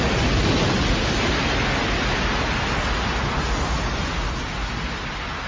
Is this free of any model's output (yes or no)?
yes